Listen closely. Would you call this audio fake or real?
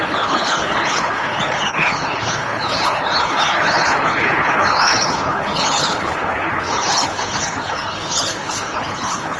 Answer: fake